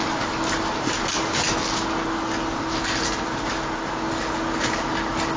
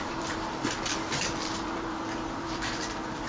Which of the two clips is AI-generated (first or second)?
second